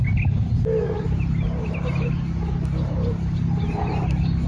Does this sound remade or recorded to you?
recorded